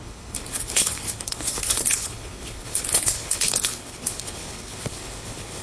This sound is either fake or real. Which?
fake